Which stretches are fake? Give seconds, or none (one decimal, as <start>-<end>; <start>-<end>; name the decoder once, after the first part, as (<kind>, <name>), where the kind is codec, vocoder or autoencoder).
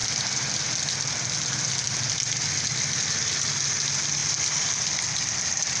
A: none